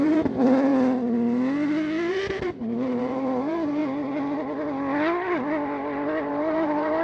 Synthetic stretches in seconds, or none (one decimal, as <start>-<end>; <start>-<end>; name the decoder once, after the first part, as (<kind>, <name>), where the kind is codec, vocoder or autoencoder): 0.0-0.7 (vocoder, BigVGAN v2); 2.1-3.8; 6.3-7.0